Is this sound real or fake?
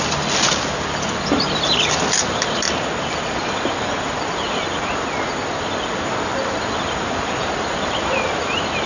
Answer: real